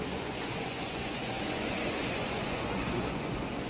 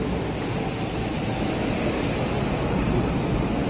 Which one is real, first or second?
second